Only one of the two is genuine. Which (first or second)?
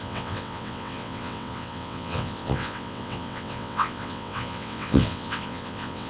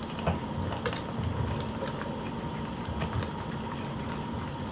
second